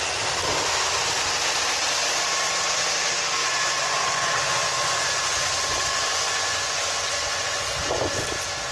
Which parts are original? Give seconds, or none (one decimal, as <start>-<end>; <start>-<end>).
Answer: 0.0-3.4; 8.2-8.7

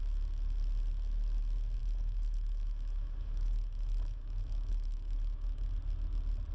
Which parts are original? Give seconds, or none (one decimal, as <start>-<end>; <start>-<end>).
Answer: 0.0-1.8; 5.7-6.5

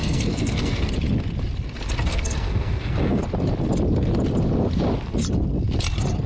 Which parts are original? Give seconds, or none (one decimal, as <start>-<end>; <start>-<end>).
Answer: 0.9-2.1; 3.2-6.3